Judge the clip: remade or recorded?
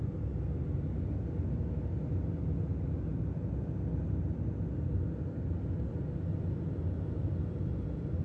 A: recorded